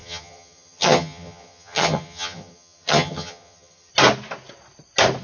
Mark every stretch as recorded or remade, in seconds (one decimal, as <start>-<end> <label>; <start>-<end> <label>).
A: 0.0-3.9 remade; 3.9-5.2 recorded